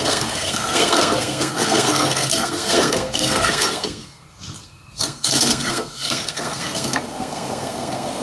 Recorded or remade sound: remade